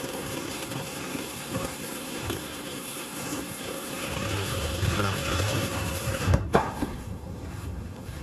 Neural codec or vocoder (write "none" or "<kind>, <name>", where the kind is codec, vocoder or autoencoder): codec, SNAC